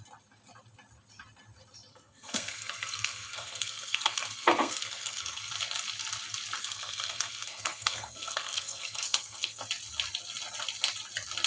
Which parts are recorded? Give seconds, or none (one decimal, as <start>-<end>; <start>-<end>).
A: 0.0-1.9; 5.5-6.6; 9.6-11.5